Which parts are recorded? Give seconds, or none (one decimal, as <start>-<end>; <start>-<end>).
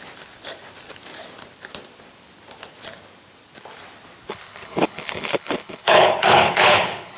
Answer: 0.0-4.3